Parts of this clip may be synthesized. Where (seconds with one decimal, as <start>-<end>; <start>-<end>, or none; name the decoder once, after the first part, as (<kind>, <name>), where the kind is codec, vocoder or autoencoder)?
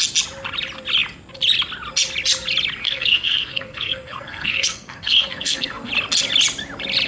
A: 2.8-5.9 (codec, SNAC)